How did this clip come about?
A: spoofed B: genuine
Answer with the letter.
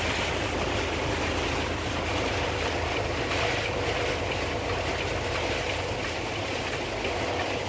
B